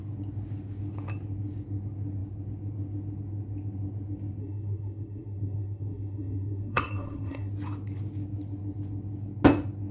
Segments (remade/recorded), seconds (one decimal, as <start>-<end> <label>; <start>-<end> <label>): 0.0-4.4 recorded; 4.4-7.5 remade; 7.5-9.9 recorded